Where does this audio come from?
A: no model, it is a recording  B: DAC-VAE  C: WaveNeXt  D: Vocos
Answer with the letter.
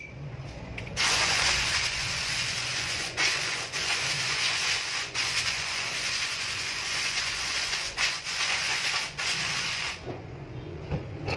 D